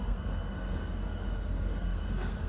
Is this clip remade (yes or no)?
yes